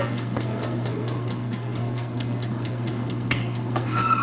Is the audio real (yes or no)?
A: no